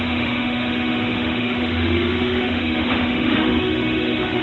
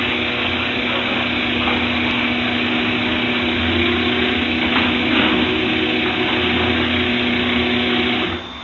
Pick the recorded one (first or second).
second